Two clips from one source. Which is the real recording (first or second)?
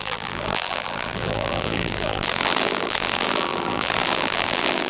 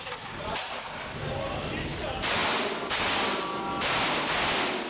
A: second